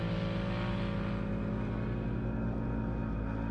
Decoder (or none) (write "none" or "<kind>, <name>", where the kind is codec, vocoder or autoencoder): none